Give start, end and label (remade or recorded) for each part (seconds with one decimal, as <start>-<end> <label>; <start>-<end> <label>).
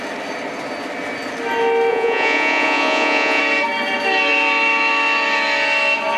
0.0-1.9 recorded; 1.9-3.4 remade; 3.4-6.2 recorded